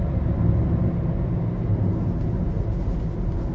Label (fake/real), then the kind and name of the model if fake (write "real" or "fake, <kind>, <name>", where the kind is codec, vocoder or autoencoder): real